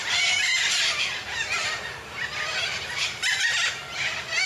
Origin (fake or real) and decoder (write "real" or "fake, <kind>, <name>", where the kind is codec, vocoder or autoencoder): real